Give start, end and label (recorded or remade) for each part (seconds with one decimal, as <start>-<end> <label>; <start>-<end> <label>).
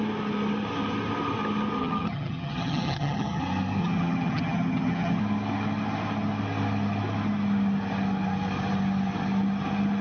0.0-1.8 recorded; 1.8-3.4 remade; 3.4-3.8 recorded; 3.8-5.2 remade; 5.2-10.0 recorded